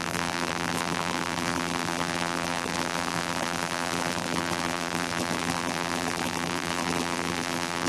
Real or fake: fake